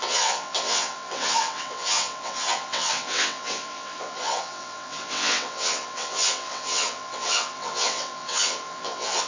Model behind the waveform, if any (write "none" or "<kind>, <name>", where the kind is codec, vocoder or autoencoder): vocoder, WaveNeXt